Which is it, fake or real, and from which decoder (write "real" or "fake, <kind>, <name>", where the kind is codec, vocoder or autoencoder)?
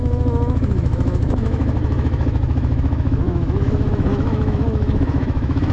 fake, autoencoder, DAC-VAE